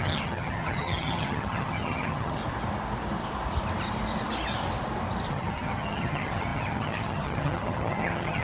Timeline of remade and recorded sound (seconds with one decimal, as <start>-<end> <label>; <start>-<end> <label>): 0.0-2.4 remade; 2.4-5.3 recorded; 5.3-8.4 remade